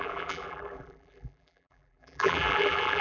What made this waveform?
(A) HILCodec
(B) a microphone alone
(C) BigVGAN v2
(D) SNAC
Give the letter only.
C